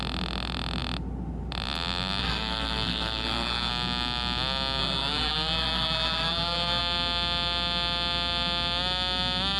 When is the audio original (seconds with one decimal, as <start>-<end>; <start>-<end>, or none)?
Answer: 0.0-2.2; 3.7-4.8; 6.8-9.6